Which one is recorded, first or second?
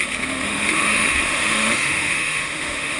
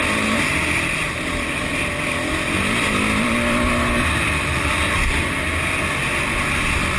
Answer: second